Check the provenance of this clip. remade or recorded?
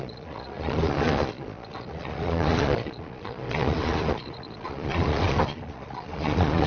remade